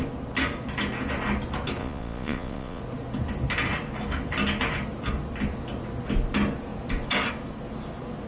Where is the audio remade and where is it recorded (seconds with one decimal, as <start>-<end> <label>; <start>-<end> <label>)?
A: 0.0-1.8 recorded; 1.8-2.8 remade; 2.8-8.3 recorded